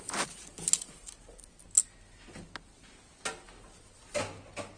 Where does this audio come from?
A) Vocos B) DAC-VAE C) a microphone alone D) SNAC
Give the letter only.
C